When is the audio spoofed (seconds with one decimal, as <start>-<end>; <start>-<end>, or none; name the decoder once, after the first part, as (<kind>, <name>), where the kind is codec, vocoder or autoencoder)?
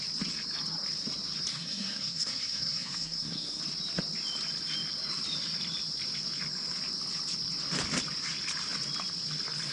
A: 1.5-3.6 (codec, SNAC)